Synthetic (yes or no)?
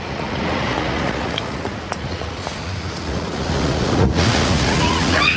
yes